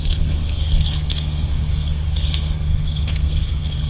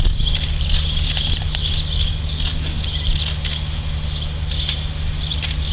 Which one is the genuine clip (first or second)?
second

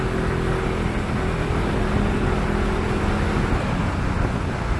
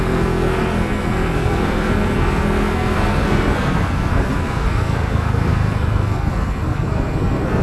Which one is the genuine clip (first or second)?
first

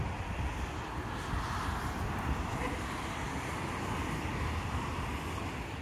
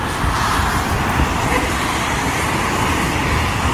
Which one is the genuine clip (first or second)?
first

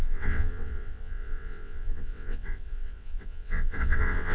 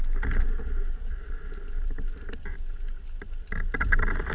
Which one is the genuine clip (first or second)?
second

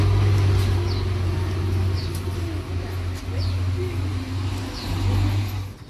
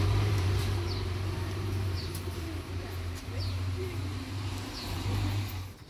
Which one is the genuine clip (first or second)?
first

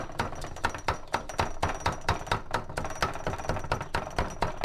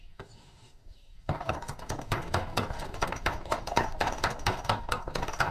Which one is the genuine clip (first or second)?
first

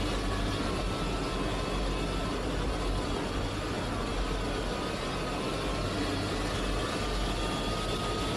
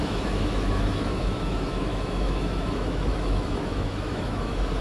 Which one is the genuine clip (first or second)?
first